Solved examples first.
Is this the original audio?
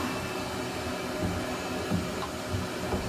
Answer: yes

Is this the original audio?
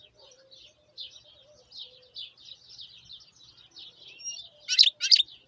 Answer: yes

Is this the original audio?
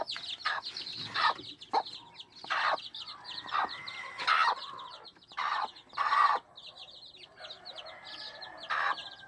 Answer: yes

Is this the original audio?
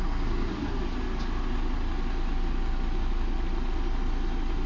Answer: yes